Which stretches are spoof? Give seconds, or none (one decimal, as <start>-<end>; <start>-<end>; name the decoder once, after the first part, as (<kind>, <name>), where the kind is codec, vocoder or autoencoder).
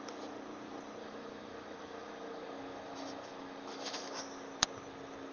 1.0-4.2 (autoencoder, DAC-VAE)